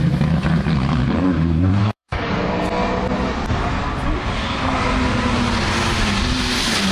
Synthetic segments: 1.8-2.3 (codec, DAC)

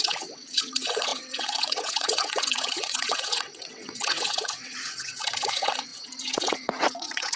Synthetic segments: 0.0-7.4 (vocoder, WaveNeXt)

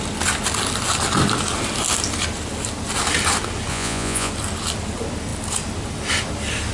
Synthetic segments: 3.7-4.3 (vocoder, Vocos)

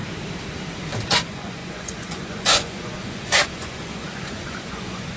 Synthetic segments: 1.1-5.2 (vocoder, Vocos)

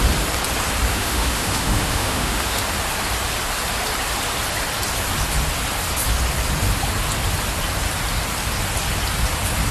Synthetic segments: 0.9-2.6 (autoencoder, DAC-VAE)

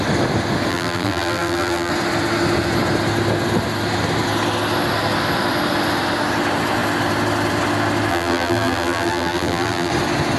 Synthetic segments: 0.7-1.9 (vocoder, BigVGAN v2); 8.1-9.9

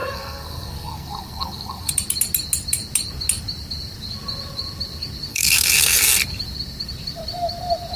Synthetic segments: 0.0-1.9 (codec, SNAC); 5.3-6.2

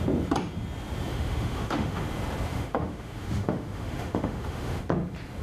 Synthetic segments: 1.1-2.0 (autoencoder, DAC-VAE); 2.5-4.8